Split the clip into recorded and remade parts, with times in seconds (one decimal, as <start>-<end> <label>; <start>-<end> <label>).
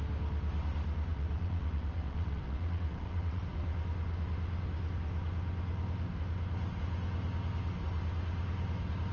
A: 0.0-1.1 recorded; 1.1-3.4 remade; 3.4-9.1 recorded